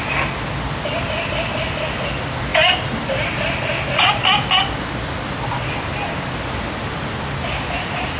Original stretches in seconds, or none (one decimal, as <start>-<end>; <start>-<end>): 0.0-8.2